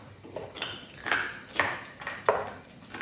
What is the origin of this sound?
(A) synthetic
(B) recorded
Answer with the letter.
B